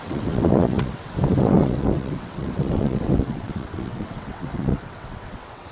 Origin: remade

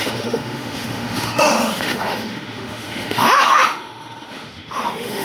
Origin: remade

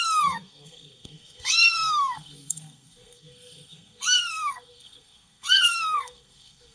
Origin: remade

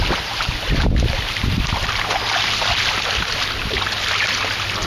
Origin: recorded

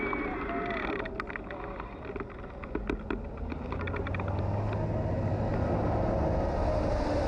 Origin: recorded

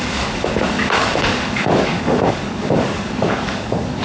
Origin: remade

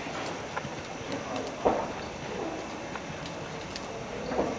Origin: recorded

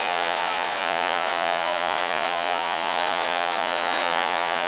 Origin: remade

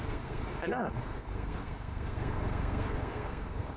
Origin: remade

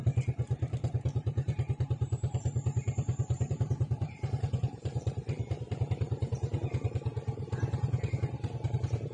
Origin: remade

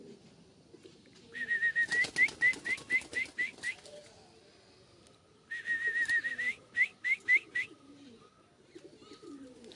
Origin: recorded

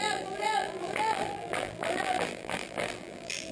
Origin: remade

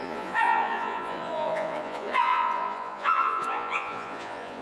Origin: remade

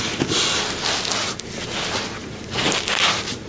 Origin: recorded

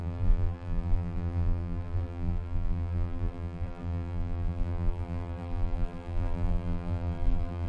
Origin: remade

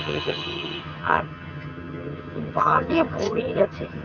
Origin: remade